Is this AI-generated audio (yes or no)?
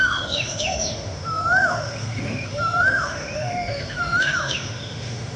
yes